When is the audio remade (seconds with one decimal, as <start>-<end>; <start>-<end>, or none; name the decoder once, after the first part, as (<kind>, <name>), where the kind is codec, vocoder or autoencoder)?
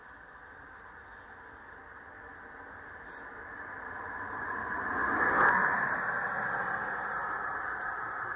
3.3-5.0 (vocoder, BigVGAN v2); 7.4-8.4